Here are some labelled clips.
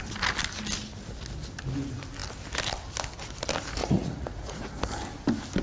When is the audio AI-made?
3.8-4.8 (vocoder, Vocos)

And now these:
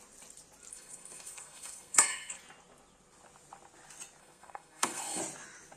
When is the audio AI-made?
0.7-2.4 (codec, SNAC); 4.2-5.2

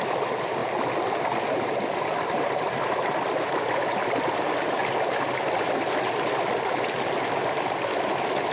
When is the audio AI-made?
none

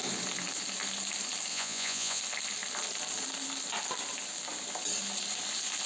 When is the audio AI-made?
1.5-2.2 (vocoder, Vocos)

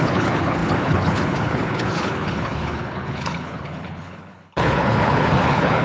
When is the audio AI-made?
0.0-5.8 (codec, HILCodec)